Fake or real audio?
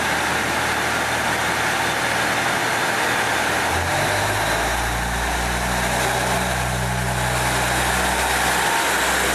real